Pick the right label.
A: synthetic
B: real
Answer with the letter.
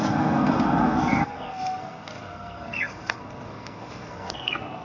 A